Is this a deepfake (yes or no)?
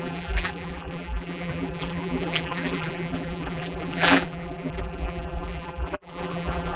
yes